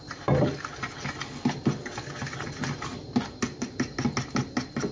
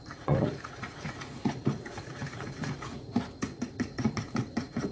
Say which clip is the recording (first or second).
first